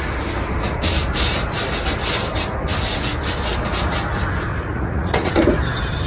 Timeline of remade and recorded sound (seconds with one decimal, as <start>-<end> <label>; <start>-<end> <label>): 0.0-4.5 recorded; 4.5-5.3 remade; 5.3-6.1 recorded

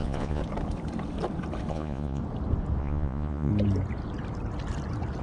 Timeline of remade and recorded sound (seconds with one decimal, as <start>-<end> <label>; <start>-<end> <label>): 0.0-0.4 remade; 0.4-1.7 recorded; 1.7-2.2 remade; 2.2-2.8 recorded; 2.8-3.5 remade; 3.5-5.2 recorded